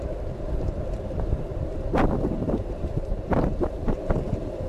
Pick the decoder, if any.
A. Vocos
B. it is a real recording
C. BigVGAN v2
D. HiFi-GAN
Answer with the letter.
C